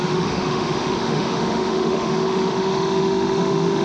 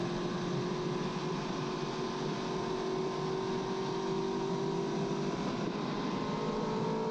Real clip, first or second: second